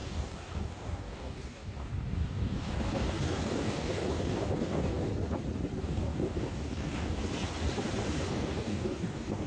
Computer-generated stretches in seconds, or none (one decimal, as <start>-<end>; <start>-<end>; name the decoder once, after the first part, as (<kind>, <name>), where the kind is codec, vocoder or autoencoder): 0.0-5.1 (codec, DAC); 5.8-7.2; 8.3-9.5